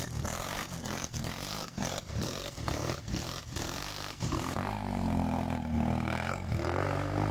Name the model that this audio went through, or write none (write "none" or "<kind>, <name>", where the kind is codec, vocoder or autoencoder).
codec, SNAC